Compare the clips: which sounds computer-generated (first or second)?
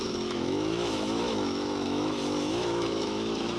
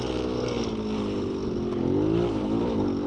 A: first